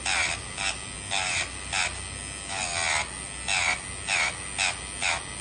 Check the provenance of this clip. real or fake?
real